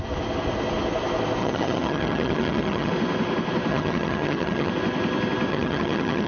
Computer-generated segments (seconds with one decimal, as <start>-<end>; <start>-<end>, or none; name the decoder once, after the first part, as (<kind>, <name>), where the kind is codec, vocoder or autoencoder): 1.4-2.9 (vocoder, HiFi-GAN); 3.7-4.7; 5.5-6.3